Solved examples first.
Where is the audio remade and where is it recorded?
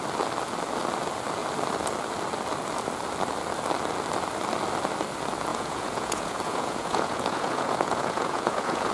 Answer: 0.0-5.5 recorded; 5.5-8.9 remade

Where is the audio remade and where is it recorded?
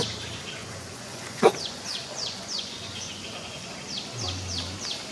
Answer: 0.0-0.6 recorded; 0.6-3.7 remade; 3.7-5.1 recorded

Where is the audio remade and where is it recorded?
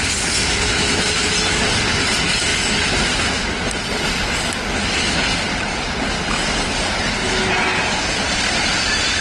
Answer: 0.0-9.2 recorded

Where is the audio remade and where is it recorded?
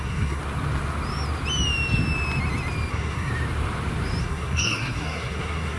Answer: 0.0-0.4 remade; 0.4-2.9 recorded; 2.9-3.3 remade; 3.3-4.2 recorded; 4.2-5.8 remade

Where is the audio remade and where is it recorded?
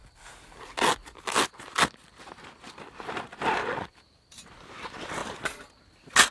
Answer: 0.0-3.6 recorded; 3.6-5.2 remade; 5.2-6.3 recorded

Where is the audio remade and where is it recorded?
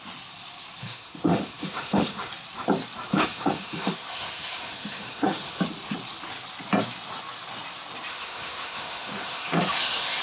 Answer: 0.0-0.8 recorded; 0.8-2.3 remade; 2.3-3.1 recorded; 3.1-5.6 remade; 5.6-8.1 recorded; 8.1-10.2 remade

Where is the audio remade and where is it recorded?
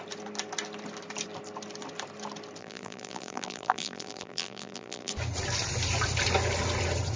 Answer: 0.0-2.6 recorded; 2.6-5.1 remade; 5.1-7.2 recorded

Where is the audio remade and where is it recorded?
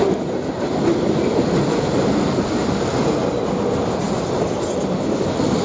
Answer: 0.0-5.6 recorded